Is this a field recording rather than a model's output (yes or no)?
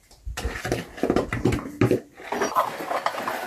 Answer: yes